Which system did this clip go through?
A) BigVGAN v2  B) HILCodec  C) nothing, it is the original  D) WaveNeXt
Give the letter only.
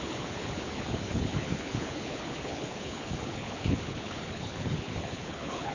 B